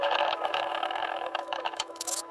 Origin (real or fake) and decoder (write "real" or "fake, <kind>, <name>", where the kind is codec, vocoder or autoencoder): fake, autoencoder, DAC-VAE